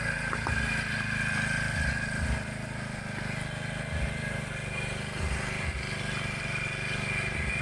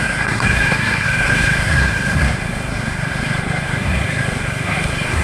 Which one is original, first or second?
first